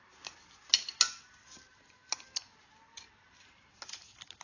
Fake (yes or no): no